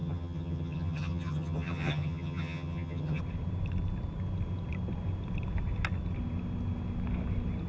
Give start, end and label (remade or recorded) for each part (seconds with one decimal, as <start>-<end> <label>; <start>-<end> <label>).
0.0-3.2 remade; 3.2-7.7 recorded